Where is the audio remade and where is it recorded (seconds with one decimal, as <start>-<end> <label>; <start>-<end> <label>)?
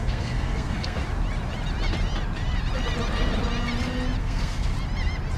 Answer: 0.0-1.0 remade; 1.0-4.2 recorded; 4.2-4.7 remade; 4.7-5.4 recorded